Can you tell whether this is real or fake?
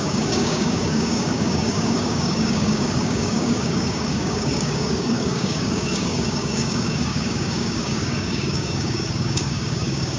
fake